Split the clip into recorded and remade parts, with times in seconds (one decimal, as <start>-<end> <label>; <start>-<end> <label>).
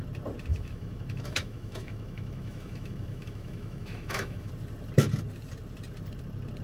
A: 0.0-0.5 recorded; 0.5-4.5 remade; 4.5-6.6 recorded